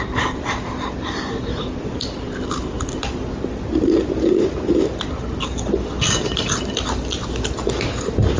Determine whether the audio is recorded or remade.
recorded